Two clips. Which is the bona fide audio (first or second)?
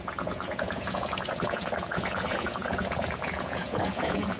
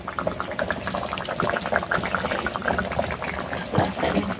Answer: second